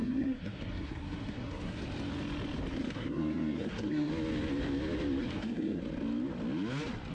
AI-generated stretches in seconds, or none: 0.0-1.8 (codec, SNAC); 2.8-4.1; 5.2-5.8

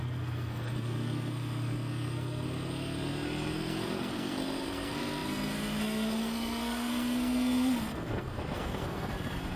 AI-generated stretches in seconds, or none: 0.0-9.6 (codec, SNAC)

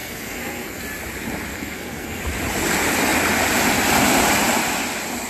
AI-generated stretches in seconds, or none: 0.0-0.8 (codec, SNAC); 1.5-2.2

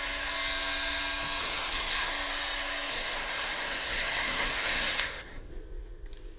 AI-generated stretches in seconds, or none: 1.4-2.1 (codec, SNAC); 2.9-5.5

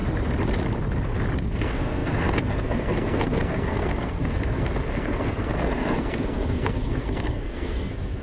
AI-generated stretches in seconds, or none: 1.5-8.2 (codec, SNAC)

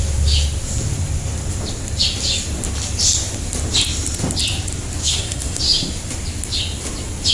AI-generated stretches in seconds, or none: 5.0-5.6 (codec, SNAC)

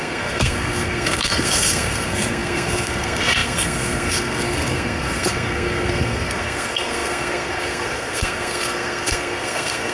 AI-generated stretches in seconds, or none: 0.0-9.9 (codec, SNAC)

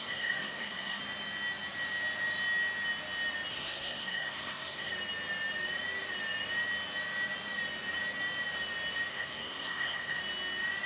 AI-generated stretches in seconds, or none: 0.0-1.0 (codec, SNAC); 3.5-4.9; 9.1-10.2